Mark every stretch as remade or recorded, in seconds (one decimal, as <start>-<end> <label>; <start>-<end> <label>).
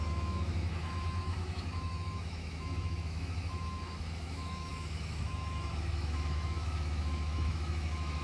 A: 0.0-8.2 remade